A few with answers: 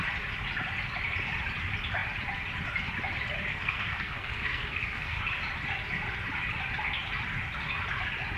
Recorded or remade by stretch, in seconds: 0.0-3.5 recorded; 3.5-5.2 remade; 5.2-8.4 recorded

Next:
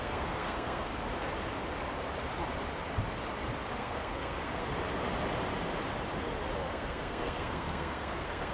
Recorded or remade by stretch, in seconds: 0.0-0.9 remade; 0.9-3.7 recorded; 3.7-4.6 remade; 4.6-6.7 recorded; 6.7-8.5 remade